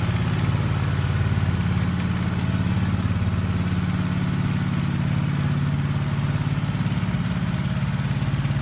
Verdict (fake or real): real